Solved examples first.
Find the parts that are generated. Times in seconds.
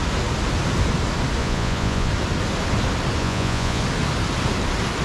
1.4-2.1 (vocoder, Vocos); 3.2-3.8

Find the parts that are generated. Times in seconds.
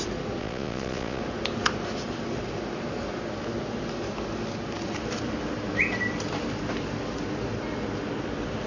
0.4-1.2 (vocoder, Vocos)